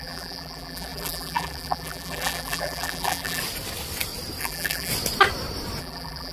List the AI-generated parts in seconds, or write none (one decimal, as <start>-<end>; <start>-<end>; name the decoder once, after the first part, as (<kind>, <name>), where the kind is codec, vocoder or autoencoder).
0.0-3.4 (vocoder, BigVGAN v2); 4.4-4.9; 5.8-6.3

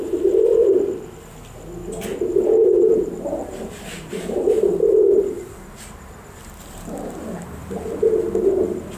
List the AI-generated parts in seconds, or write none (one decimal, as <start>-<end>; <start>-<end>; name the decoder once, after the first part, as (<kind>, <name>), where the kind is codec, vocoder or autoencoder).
0.6-1.2 (vocoder, BigVGAN v2); 2.6-7.8

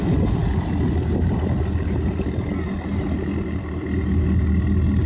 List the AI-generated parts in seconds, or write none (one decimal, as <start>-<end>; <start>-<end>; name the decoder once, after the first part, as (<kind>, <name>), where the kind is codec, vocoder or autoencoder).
none

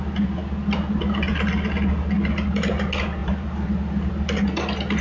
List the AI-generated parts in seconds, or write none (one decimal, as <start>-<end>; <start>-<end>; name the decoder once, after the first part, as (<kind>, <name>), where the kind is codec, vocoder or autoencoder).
3.2-4.1 (vocoder, BigVGAN v2)